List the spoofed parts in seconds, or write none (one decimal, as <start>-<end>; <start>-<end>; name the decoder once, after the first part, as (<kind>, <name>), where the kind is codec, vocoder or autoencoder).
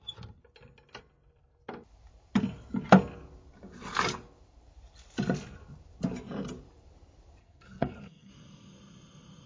7.4-8.3 (codec, SNAC)